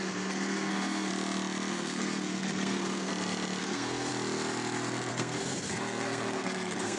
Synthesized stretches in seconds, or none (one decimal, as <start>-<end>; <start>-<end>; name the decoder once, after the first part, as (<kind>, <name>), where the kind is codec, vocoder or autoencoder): 0.0-1.1 (codec, SNAC); 1.7-3.1; 3.6-4.1; 5.1-7.0